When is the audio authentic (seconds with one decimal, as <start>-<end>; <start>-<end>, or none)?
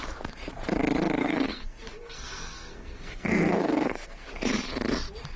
0.0-1.2; 4.3-5.4